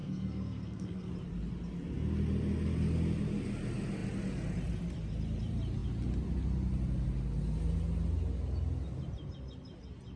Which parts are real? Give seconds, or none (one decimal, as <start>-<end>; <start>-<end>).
1.1-10.2